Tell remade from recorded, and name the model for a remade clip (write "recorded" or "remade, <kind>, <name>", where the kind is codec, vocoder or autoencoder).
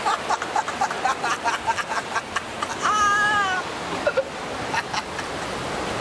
recorded